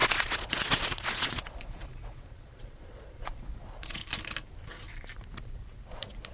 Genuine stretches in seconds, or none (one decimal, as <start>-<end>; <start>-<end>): 4.0-5.4